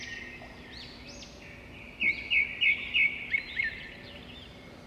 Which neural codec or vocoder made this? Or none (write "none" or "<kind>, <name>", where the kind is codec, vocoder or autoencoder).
none